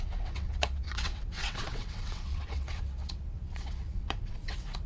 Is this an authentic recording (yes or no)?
no